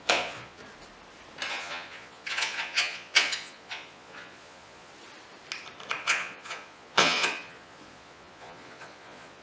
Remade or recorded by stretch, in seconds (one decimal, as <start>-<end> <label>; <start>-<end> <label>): 0.0-0.6 remade; 0.6-1.5 recorded; 1.5-4.9 remade; 4.9-6.0 recorded; 6.0-9.4 remade